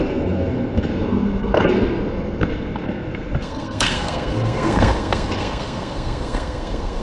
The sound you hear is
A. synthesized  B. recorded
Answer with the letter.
A